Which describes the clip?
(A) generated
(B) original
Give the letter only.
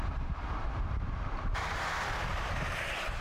A